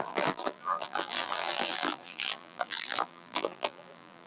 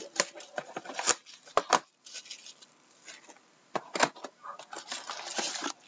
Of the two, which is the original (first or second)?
second